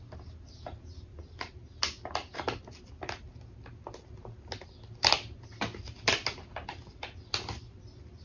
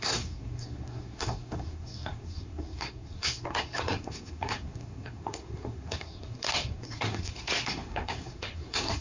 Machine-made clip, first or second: second